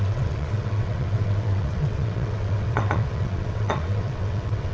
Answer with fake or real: fake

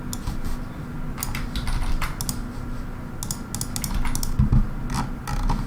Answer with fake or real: real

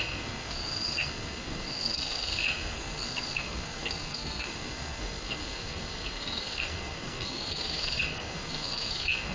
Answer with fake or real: fake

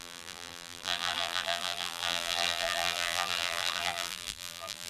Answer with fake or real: fake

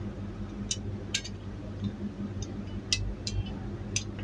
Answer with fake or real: real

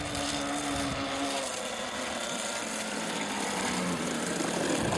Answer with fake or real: real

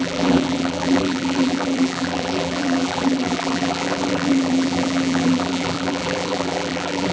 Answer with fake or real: fake